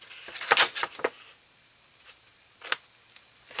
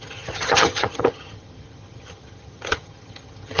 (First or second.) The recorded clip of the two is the first